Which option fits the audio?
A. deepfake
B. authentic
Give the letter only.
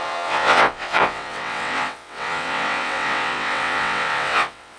A